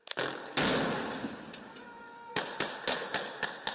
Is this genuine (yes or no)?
yes